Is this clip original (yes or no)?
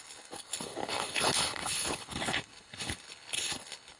no